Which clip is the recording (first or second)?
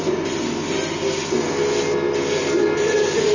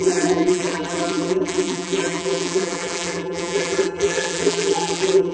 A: first